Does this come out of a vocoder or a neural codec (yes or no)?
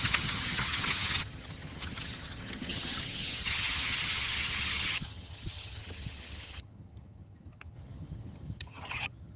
yes